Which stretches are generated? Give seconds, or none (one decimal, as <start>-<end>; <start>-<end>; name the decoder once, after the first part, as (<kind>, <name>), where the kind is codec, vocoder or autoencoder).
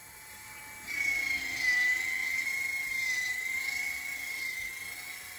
0.0-0.6 (vocoder, BigVGAN v2); 2.2-4.7